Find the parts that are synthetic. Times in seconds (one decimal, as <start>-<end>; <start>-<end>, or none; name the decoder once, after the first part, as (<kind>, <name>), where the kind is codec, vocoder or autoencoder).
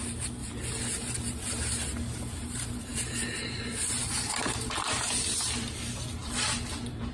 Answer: 0.0-0.4 (vocoder, BigVGAN v2); 1.1-7.1